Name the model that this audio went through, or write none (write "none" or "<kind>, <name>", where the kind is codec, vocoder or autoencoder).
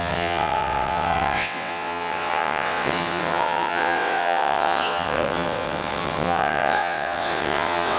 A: vocoder, WaveNeXt